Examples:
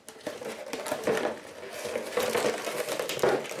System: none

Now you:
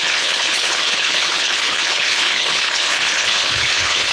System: codec, HILCodec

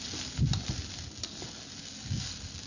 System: none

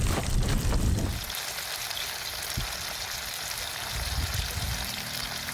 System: none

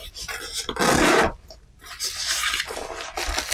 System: none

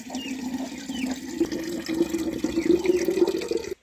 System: none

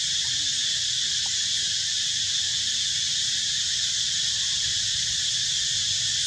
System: none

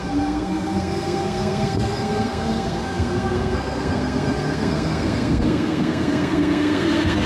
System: codec, SNAC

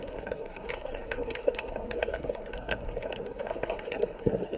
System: codec, SNAC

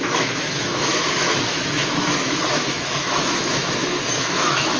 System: autoencoder, DAC-VAE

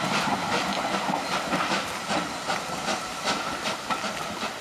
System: none